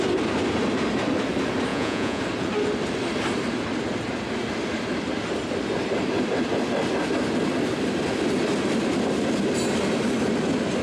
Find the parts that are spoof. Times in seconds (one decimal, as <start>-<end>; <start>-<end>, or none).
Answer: 1.7-2.2